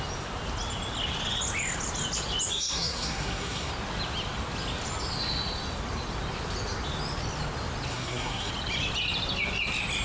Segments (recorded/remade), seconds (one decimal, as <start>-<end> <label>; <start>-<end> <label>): 0.0-2.5 recorded; 2.5-3.7 remade; 3.7-7.9 recorded; 7.9-8.5 remade; 8.5-10.0 recorded